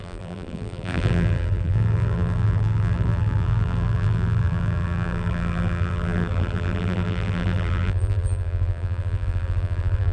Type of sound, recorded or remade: remade